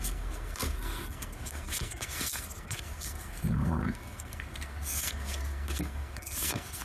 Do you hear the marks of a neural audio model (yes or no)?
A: yes